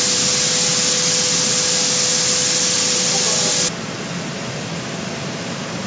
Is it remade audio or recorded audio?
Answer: recorded